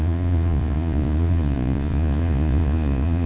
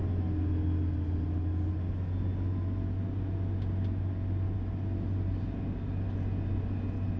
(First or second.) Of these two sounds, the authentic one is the second